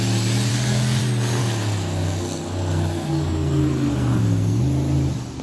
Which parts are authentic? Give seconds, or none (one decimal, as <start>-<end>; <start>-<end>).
0.0-0.5; 1.0-1.4; 4.6-5.4